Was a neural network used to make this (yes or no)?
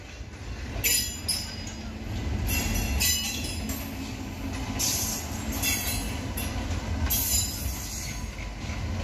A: no